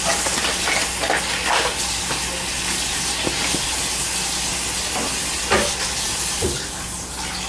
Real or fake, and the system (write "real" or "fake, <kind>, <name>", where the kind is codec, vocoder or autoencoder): real